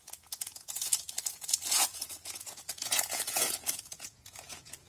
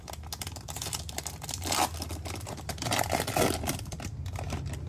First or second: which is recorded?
second